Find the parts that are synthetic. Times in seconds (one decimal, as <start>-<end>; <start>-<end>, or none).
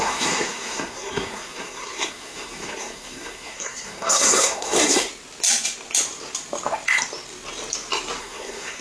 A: 0.0-5.1; 8.2-8.8